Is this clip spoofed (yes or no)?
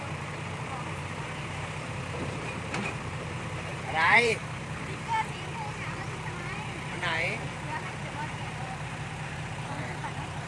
yes